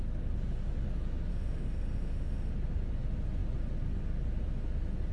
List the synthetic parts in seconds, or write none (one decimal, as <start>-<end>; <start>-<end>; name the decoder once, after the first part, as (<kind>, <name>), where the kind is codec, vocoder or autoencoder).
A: 1.3-2.5 (autoencoder, DAC-VAE)